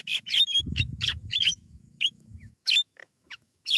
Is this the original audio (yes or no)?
no